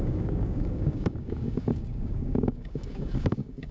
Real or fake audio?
fake